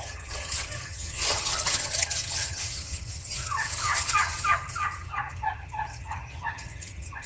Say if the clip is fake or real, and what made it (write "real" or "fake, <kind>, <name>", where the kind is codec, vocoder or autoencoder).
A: fake, vocoder, HiFi-GAN